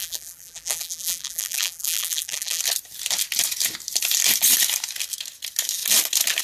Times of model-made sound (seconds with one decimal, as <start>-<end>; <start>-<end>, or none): 0.0-2.6